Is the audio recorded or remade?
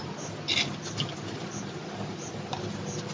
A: recorded